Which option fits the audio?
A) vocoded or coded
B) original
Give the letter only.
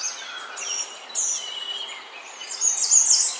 B